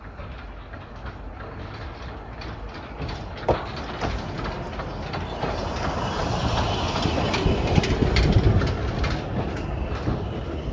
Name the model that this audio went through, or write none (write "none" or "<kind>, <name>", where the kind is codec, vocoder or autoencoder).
none